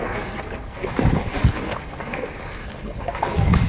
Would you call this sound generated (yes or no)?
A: yes